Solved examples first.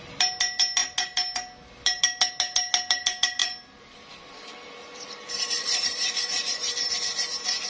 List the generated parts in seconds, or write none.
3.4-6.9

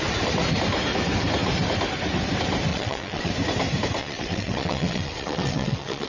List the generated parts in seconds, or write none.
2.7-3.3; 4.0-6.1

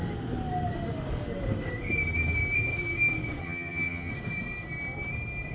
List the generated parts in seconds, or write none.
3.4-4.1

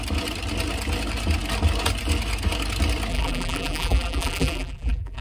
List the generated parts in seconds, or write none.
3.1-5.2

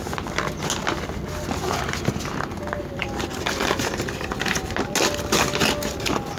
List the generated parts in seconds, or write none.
3.0-3.7